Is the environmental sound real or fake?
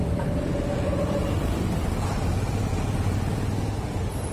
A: real